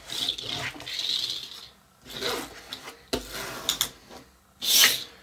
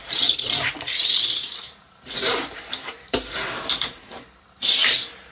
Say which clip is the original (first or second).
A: first